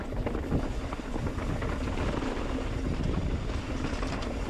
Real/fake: real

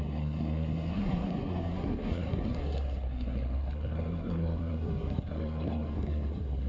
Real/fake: fake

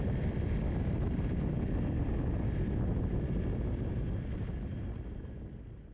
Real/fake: real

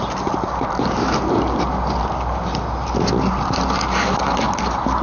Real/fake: real